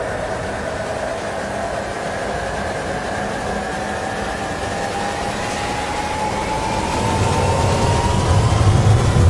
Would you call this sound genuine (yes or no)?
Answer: yes